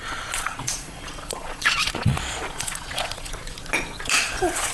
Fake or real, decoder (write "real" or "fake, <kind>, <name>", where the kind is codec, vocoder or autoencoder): fake, vocoder, Vocos